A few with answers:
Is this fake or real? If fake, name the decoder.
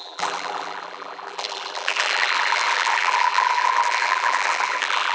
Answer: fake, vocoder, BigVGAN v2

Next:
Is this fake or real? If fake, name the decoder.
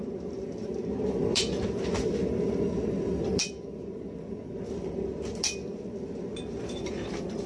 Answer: fake, vocoder, BigVGAN v2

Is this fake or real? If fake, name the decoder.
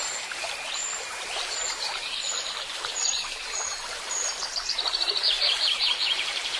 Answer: fake, vocoder, BigVGAN v2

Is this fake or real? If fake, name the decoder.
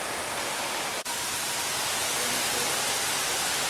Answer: real